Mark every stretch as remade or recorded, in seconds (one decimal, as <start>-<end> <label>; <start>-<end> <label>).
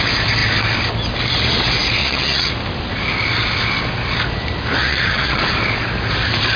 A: 0.0-2.0 recorded; 2.0-2.5 remade; 2.5-4.8 recorded; 4.8-5.4 remade; 5.4-6.6 recorded